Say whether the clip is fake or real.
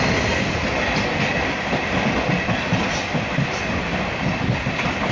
real